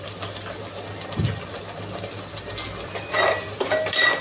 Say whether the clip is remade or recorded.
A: recorded